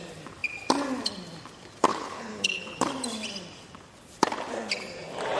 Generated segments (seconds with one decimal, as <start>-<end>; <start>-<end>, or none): 1.9-2.9

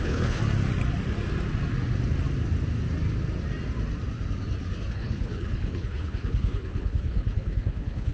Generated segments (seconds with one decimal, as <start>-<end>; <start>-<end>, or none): 0.0-0.4; 4.9-8.1

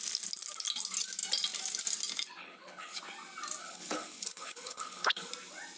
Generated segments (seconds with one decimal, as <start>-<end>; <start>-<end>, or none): 2.4-3.0; 3.6-5.3

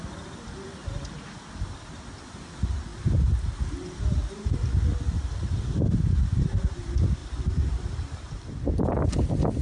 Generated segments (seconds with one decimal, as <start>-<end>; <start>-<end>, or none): none

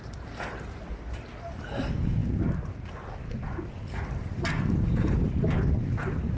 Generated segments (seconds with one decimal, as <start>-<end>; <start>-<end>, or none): none

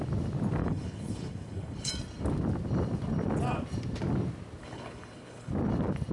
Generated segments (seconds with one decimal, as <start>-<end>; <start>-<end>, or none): 0.6-1.9; 4.6-5.5

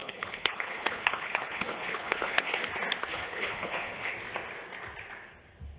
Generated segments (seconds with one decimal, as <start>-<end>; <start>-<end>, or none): 0.0-2.6; 3.1-4.1

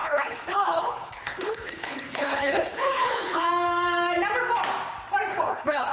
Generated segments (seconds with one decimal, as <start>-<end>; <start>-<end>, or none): 0.0-3.5; 5.3-5.9